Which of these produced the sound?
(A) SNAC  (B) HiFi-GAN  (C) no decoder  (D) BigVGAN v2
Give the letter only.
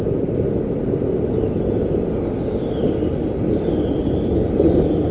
C